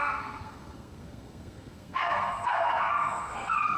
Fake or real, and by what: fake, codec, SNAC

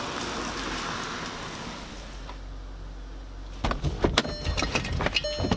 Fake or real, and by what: real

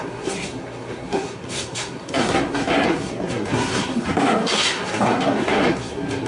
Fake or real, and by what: fake, codec, SNAC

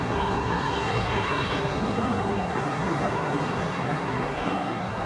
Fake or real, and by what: fake, codec, SNAC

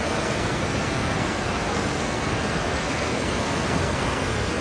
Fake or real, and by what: fake, codec, SNAC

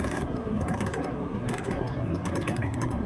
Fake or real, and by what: fake, codec, SNAC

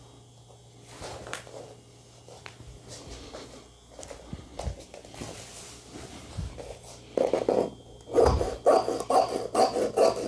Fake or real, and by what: real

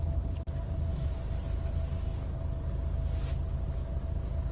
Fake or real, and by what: real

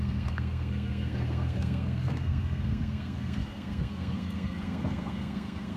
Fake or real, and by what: fake, codec, SNAC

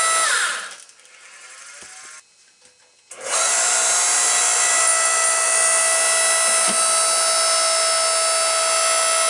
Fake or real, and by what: real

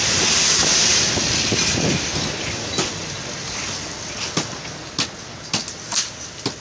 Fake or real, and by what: real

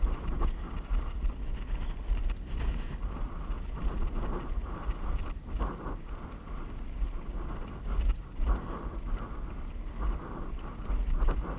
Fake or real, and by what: real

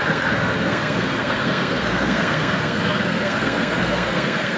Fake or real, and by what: fake, codec, SNAC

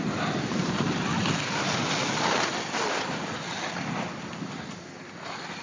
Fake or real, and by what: real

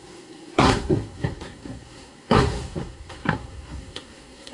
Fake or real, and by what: fake, codec, SNAC